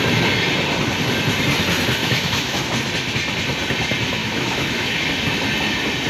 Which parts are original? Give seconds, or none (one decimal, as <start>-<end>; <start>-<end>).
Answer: 0.0-2.0; 2.6-4.2; 5.1-6.1

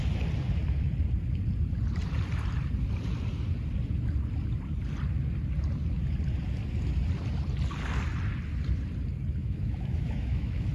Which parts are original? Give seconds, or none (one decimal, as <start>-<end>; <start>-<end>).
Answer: 0.0-9.4

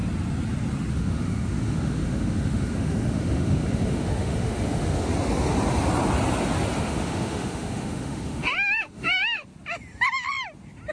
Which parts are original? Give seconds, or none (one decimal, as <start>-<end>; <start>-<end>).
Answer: 0.0-0.9; 5.1-6.8; 9.5-10.9